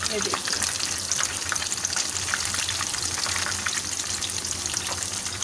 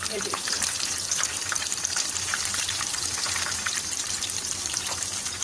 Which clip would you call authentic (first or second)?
first